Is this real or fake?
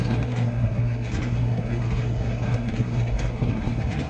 fake